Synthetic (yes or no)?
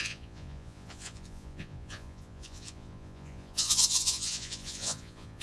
yes